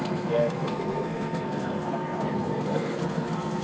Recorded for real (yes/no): no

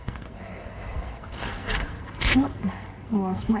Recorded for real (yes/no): no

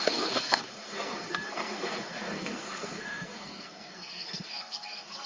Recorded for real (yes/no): no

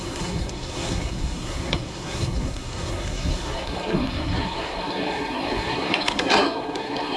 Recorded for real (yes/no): no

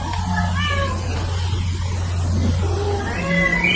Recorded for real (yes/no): yes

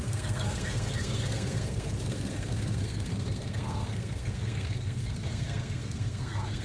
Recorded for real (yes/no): no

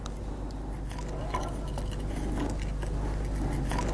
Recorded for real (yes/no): yes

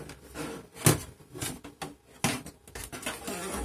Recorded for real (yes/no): yes